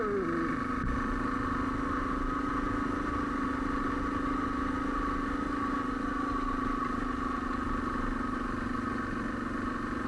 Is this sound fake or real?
real